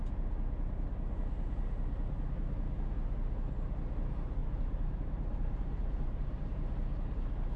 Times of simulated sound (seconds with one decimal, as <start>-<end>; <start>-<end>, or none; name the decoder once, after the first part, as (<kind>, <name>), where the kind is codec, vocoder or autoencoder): 4.4-6.4 (vocoder, BigVGAN v2)